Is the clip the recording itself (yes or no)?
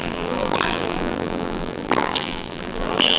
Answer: no